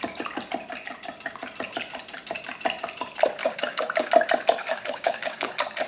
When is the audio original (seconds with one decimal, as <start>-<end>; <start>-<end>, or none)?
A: 0.0-3.4; 4.1-4.6; 5.5-5.9